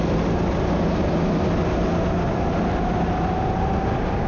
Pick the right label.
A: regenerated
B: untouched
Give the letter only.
B